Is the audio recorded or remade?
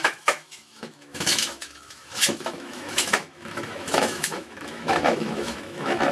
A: remade